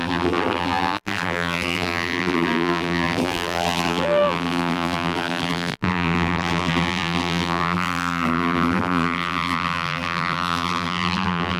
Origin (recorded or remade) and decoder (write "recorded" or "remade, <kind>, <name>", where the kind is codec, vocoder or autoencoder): remade, vocoder, BigVGAN v2